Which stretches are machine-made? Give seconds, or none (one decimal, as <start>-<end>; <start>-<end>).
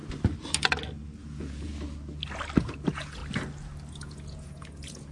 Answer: 1.2-1.7; 2.6-3.2; 3.9-5.1